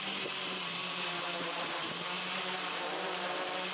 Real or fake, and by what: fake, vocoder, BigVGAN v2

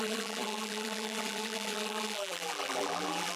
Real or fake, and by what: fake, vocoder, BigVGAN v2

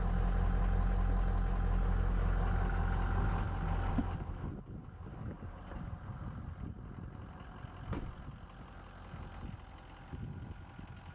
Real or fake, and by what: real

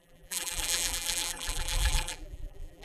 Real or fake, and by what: fake, vocoder, BigVGAN v2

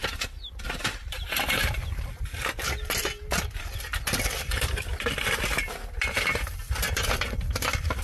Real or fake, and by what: fake, vocoder, BigVGAN v2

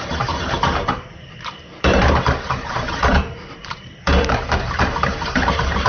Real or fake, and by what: fake, vocoder, BigVGAN v2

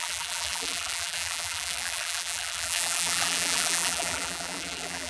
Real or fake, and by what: fake, vocoder, BigVGAN v2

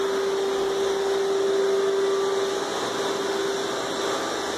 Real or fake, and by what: real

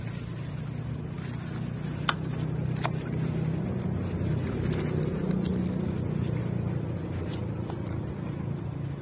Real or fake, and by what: real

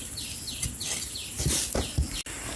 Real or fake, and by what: real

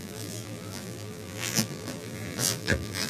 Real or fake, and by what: fake, vocoder, BigVGAN v2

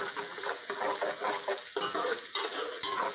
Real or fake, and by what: fake, vocoder, BigVGAN v2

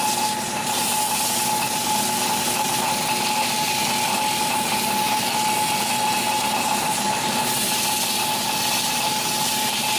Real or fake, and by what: real